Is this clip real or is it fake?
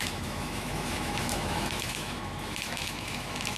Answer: fake